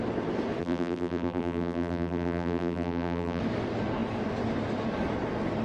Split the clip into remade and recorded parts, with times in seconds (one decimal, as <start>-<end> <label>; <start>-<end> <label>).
0.0-0.6 recorded; 0.6-3.4 remade; 3.4-5.6 recorded